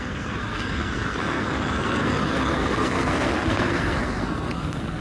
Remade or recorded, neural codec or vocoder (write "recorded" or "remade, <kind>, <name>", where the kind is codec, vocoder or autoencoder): remade, codec, SNAC